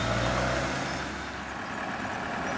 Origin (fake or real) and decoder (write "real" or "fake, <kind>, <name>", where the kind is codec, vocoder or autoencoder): real